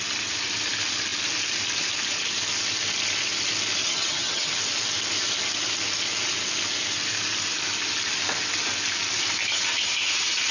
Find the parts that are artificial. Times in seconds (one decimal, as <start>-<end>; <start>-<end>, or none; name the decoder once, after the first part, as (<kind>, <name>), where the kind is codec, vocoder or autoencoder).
3.8-4.6 (vocoder, HiFi-GAN)